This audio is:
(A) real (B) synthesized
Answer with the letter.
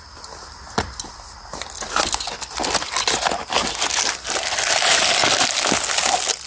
A